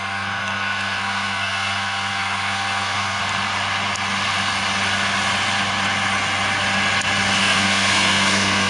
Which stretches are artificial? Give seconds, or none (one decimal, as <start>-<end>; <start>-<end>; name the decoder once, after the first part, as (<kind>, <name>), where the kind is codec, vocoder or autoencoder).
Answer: 0.0-3.2 (codec, SNAC); 7.4-8.7